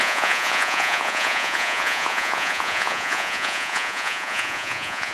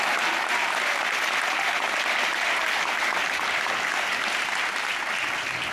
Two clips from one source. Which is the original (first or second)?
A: second